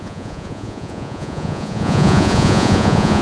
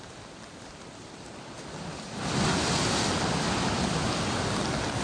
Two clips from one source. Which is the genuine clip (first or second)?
second